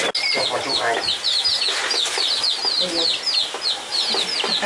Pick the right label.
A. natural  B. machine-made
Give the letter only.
A